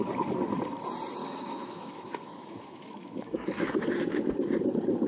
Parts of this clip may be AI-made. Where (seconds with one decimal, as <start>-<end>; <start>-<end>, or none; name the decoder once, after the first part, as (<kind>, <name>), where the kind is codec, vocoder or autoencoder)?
1.2-3.8 (autoencoder, DAC-VAE)